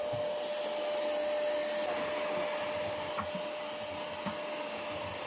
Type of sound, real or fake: real